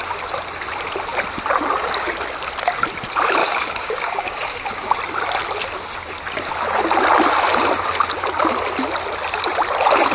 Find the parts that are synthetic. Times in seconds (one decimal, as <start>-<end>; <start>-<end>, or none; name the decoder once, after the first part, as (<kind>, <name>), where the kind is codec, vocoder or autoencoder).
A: 3.4-5.0 (codec, DAC)